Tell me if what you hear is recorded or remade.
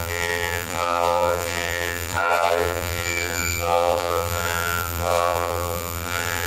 remade